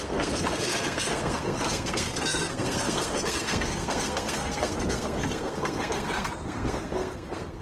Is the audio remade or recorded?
remade